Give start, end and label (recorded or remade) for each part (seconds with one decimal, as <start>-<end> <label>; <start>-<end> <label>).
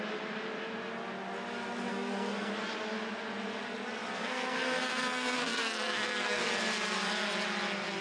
0.0-1.9 recorded; 1.9-2.5 remade; 2.5-4.2 recorded; 4.2-6.4 remade; 6.4-8.0 recorded